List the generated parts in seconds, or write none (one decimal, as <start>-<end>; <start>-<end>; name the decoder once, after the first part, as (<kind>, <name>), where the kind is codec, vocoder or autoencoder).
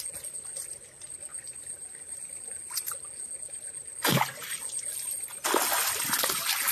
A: 1.3-2.8 (vocoder, BigVGAN v2)